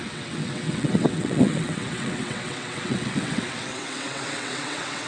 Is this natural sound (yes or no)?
no